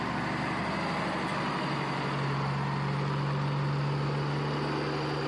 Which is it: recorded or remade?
recorded